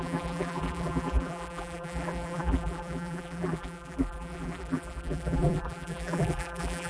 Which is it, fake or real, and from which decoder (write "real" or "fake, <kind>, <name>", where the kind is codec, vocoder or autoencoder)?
fake, vocoder, BigVGAN v2